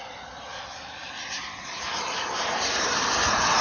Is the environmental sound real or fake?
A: real